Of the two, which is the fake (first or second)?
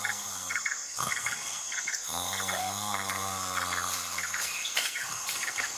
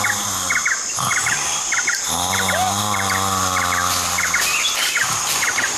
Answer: first